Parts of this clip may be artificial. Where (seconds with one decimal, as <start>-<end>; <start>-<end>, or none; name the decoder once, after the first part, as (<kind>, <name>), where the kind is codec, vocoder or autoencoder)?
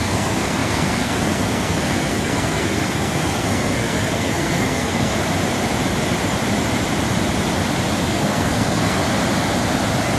0.0-5.1 (codec, SNAC); 8.1-9.0